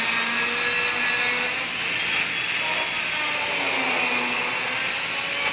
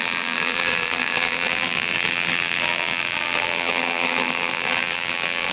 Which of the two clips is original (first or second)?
first